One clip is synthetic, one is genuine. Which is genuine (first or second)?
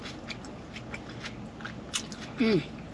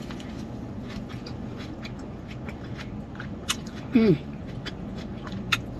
first